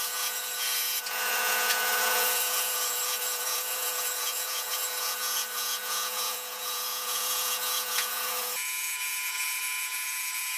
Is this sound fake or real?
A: fake